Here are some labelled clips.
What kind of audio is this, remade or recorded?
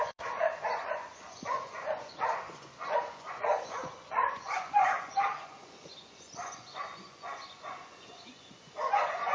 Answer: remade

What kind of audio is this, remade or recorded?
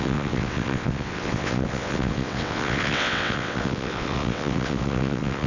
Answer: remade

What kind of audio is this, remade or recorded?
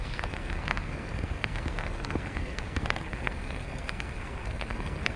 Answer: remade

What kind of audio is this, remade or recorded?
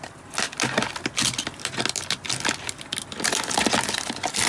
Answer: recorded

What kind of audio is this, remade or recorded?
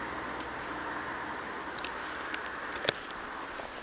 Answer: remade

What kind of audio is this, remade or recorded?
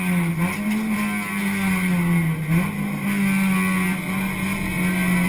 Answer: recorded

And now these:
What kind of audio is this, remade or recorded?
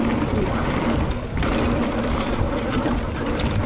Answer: recorded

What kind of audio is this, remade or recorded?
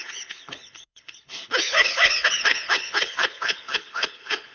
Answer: remade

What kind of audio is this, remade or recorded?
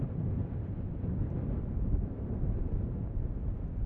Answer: recorded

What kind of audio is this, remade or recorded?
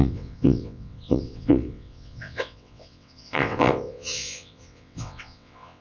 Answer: remade